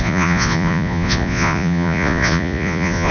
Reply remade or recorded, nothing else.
remade